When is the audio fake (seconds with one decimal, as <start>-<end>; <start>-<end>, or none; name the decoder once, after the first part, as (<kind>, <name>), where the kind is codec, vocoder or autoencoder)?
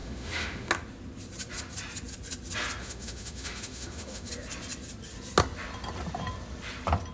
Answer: 0.0-0.7 (autoencoder, DAC-VAE); 2.8-4.3